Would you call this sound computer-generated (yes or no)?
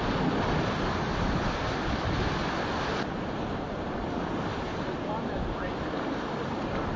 no